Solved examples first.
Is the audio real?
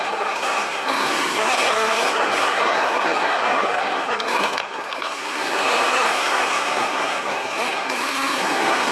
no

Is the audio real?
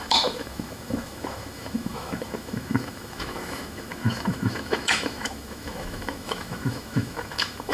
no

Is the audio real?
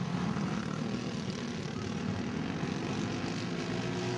yes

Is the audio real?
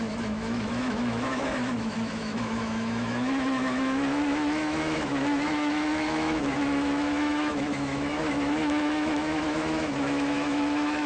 no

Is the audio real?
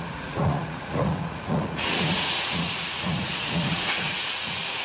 no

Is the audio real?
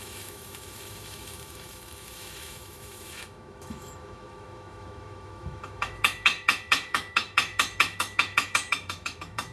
no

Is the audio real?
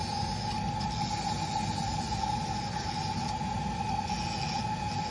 yes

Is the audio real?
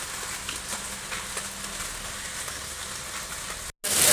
yes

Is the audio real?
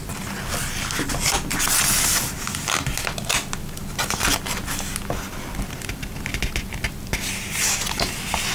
yes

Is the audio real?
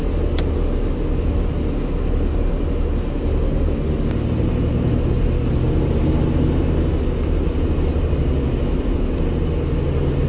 yes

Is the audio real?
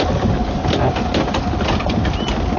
yes